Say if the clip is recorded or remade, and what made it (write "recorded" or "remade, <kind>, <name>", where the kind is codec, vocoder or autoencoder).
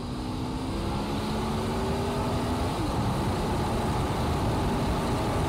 remade, vocoder, BigVGAN v2